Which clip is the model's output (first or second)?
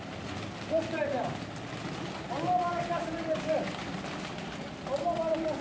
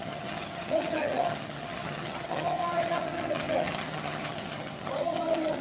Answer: second